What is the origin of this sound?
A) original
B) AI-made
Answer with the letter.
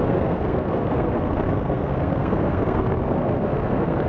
B